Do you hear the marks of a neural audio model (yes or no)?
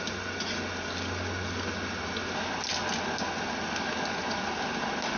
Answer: no